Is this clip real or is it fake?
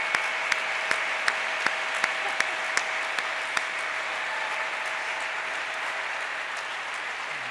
real